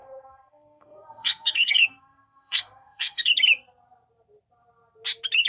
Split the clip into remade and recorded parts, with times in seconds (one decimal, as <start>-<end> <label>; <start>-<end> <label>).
0.0-3.3 remade; 3.3-5.5 recorded